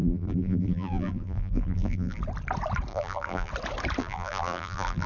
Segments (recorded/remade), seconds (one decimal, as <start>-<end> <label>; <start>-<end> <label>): 0.0-2.2 remade; 2.2-2.9 recorded; 2.9-3.5 remade; 3.5-4.0 recorded; 4.0-5.1 remade